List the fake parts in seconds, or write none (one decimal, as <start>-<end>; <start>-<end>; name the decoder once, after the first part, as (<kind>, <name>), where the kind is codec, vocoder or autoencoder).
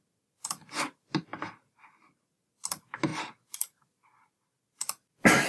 none